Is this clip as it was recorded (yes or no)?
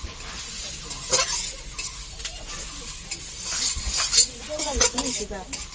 yes